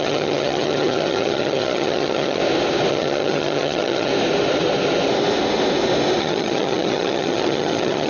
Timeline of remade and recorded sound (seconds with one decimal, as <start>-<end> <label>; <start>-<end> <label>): 0.0-2.4 remade; 2.4-2.9 recorded; 2.9-4.1 remade; 4.1-6.2 recorded; 6.2-8.1 remade